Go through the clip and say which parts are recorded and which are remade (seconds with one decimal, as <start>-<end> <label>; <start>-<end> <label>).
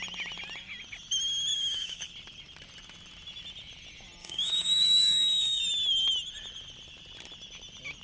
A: 0.0-1.5 recorded; 1.5-2.1 remade; 2.1-4.2 recorded; 4.2-5.6 remade; 5.6-8.0 recorded